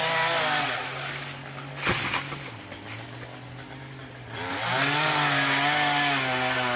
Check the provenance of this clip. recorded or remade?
recorded